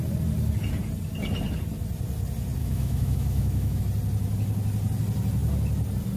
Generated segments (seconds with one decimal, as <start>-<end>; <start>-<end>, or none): 2.6-3.8